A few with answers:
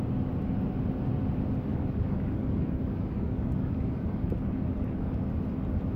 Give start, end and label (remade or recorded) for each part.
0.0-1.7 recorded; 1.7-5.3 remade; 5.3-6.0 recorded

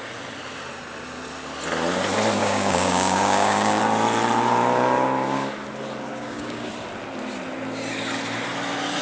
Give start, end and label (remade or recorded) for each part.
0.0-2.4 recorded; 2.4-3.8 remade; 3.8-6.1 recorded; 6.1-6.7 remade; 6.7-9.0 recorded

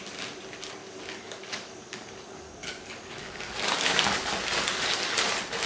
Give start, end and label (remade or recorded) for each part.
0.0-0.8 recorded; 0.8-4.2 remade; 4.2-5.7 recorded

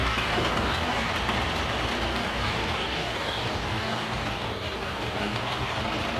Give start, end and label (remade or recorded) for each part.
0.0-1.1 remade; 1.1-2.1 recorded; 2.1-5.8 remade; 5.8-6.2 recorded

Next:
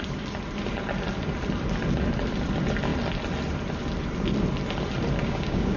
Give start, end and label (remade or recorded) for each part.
0.0-5.2 recorded; 5.2-5.8 remade

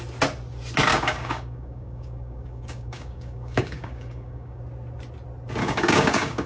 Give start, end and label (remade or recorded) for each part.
0.0-0.9 recorded; 0.9-4.6 remade; 4.6-5.6 recorded; 5.6-6.5 remade